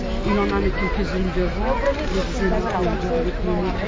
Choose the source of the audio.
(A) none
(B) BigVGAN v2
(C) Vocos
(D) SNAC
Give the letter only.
A